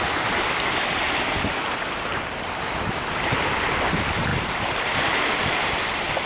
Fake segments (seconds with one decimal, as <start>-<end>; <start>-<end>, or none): none